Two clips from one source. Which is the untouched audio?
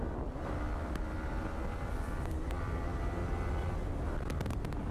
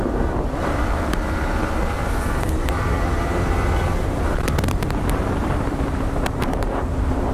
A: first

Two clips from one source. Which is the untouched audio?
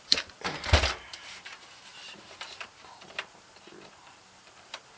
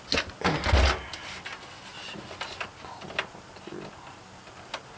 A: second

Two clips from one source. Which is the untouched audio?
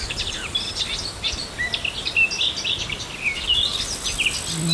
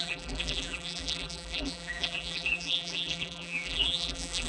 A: first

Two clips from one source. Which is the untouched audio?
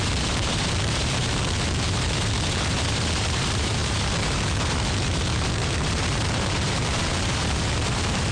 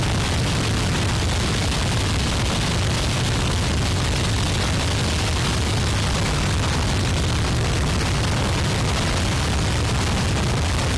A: second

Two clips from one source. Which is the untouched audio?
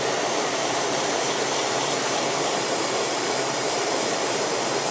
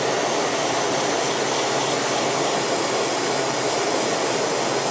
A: second